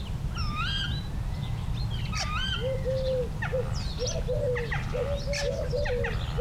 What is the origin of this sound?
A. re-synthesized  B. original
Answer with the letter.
B